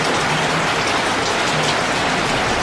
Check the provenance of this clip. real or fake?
real